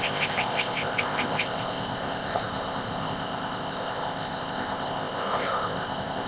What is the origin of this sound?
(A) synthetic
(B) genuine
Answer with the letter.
A